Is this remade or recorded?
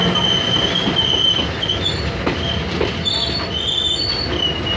recorded